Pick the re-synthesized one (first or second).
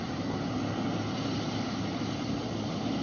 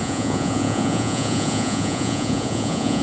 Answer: second